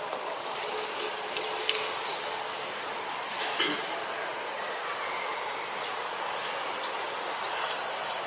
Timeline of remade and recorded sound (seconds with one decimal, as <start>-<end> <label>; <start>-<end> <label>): 0.0-8.3 recorded